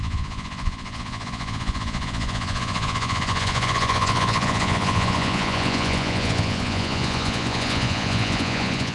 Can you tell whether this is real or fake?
fake